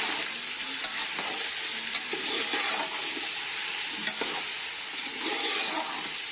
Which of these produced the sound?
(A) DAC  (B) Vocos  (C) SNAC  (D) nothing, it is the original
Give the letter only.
D